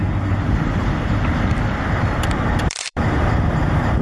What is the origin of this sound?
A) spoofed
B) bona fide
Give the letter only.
A